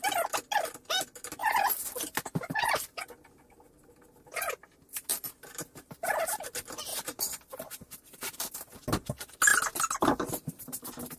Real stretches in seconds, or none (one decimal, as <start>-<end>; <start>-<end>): 0.0-6.9; 8.5-11.2